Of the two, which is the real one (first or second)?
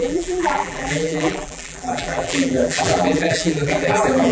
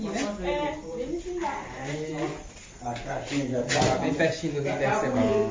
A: second